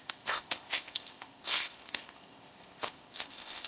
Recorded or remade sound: remade